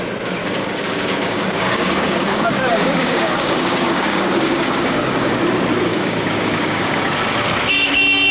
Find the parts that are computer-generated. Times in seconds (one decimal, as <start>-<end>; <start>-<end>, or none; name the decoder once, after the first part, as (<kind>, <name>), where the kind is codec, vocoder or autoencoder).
0.4-5.3 (codec, DAC); 5.9-7.0